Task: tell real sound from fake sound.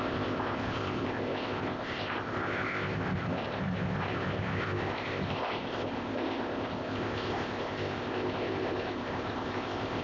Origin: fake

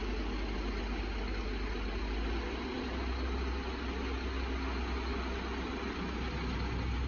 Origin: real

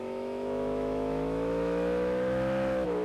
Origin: fake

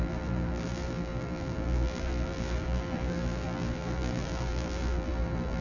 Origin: fake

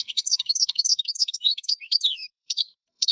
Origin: fake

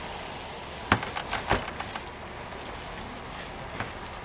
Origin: real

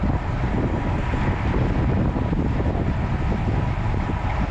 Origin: real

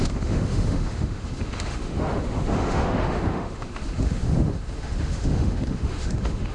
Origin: fake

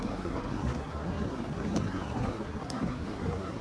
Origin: fake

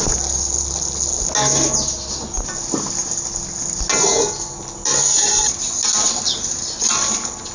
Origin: real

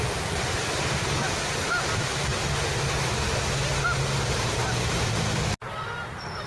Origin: real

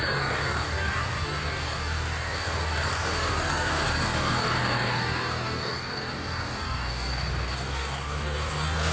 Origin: fake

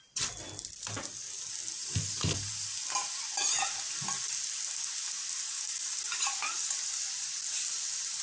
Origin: real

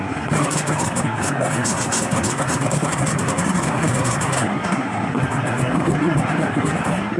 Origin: fake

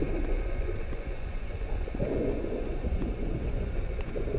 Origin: fake